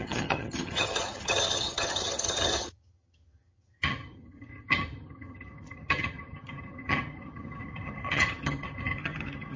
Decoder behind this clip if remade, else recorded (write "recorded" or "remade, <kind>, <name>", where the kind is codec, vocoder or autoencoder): remade, vocoder, HiFi-GAN